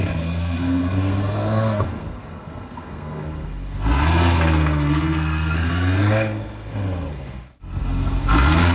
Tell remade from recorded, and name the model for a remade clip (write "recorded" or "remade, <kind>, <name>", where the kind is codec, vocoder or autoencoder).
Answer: remade, codec, SNAC